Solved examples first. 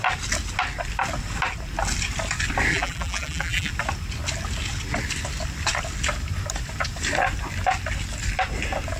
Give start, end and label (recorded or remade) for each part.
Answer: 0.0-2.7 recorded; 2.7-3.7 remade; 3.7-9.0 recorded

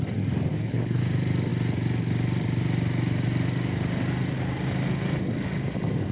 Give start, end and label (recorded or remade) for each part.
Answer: 0.0-0.5 recorded; 0.5-1.0 remade; 1.0-6.1 recorded

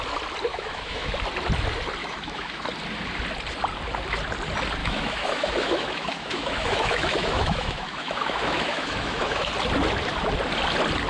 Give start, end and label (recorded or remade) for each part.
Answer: 0.0-0.5 recorded; 0.5-1.1 remade; 1.1-2.0 recorded; 2.0-2.6 remade; 2.6-4.8 recorded; 4.8-9.5 remade; 9.5-11.1 recorded

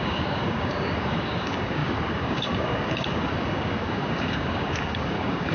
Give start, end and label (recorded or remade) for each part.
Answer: 0.0-5.5 remade